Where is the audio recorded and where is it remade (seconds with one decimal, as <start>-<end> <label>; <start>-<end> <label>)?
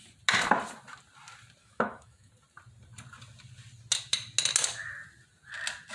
0.0-1.6 recorded; 1.6-2.3 remade; 2.3-5.9 recorded